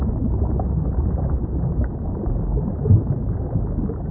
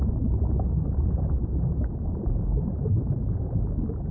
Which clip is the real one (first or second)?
first